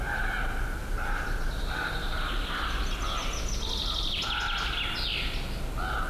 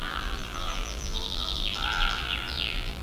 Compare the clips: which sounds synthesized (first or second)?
second